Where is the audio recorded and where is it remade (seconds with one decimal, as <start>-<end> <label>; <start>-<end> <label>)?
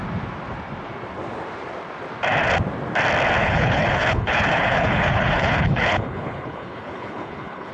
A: 0.0-3.4 recorded; 3.4-7.7 remade